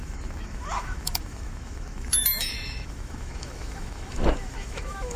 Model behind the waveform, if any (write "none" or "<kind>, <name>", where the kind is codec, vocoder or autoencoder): autoencoder, DAC-VAE